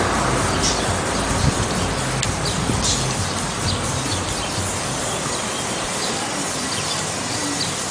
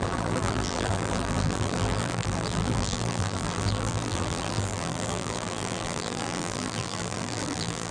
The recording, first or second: first